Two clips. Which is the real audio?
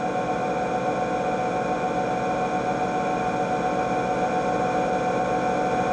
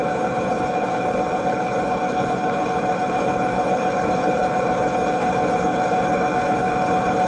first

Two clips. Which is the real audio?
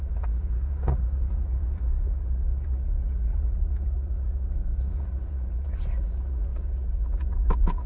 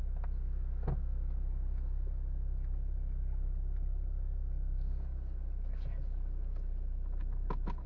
second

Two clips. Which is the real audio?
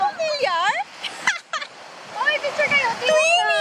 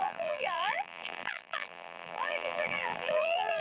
first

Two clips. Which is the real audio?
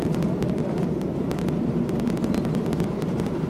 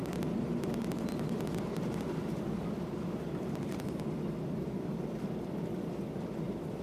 second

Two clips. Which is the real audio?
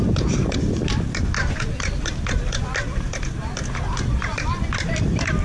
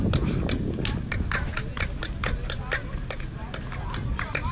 second